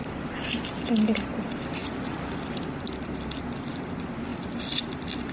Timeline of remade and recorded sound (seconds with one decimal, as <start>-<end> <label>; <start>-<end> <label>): 0.0-0.8 remade; 0.8-1.8 recorded; 1.8-2.8 remade; 2.8-5.3 recorded